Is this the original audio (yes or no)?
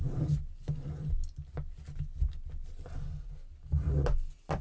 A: yes